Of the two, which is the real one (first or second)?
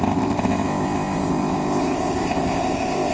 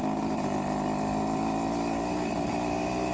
second